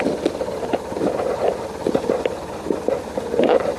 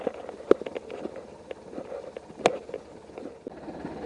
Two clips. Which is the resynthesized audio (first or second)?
first